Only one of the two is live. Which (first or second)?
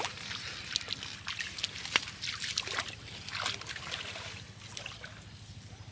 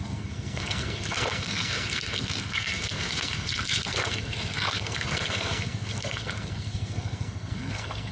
first